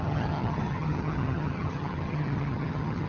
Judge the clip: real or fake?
fake